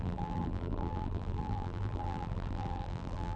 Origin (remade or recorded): remade